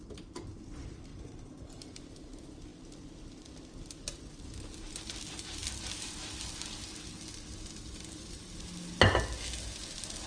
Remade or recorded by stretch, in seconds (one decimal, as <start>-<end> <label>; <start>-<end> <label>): 0.0-1.1 recorded; 1.1-1.8 remade; 1.8-10.3 recorded